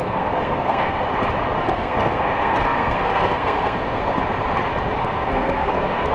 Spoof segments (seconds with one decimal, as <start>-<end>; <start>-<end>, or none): 0.0-1.0; 1.6-4.2; 5.0-6.1